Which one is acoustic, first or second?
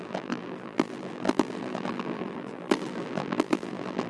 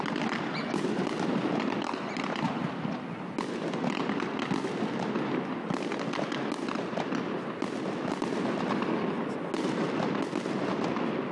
second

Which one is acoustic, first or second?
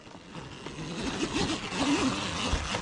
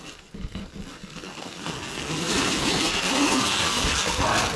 first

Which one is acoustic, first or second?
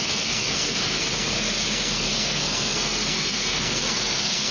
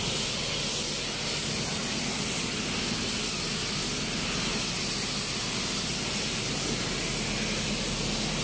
second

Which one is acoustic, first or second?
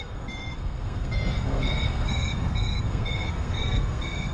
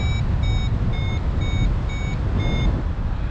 second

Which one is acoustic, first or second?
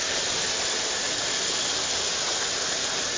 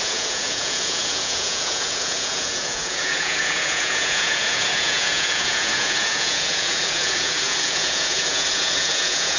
first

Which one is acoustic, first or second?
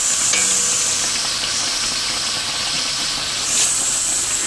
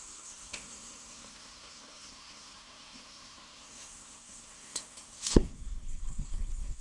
first